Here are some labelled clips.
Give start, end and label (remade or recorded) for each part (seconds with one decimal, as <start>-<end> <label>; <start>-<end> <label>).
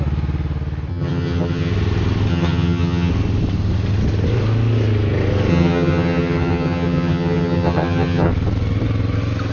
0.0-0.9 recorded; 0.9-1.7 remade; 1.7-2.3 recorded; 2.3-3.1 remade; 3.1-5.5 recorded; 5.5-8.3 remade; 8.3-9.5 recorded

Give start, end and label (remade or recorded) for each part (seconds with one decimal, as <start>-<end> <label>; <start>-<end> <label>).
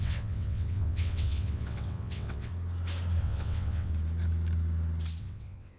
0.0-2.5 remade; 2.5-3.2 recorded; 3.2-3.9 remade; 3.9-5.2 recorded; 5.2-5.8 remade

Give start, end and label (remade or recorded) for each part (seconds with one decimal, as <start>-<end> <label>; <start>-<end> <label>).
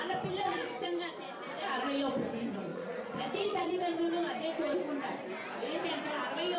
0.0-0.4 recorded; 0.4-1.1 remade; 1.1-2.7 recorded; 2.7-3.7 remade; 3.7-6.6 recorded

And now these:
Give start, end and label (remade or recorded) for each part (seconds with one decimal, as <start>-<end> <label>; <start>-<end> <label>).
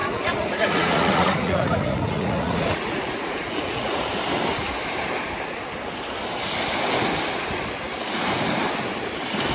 0.0-4.0 remade; 4.0-9.5 recorded